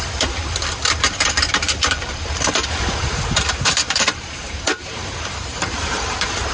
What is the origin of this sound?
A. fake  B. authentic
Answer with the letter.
A